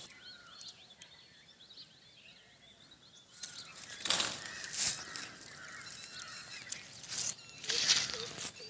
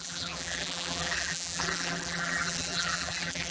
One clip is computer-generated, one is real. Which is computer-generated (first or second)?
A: second